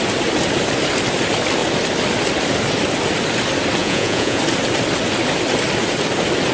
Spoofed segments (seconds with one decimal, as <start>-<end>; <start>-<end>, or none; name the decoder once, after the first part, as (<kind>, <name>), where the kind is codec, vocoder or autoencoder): 3.8-4.4 (vocoder, Vocos)